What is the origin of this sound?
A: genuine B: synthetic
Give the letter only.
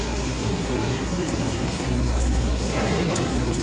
B